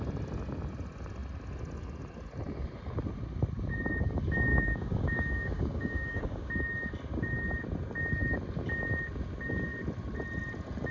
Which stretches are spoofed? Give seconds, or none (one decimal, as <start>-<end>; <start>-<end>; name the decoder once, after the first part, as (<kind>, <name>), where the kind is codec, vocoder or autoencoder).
4.5-6.5 (codec, DAC)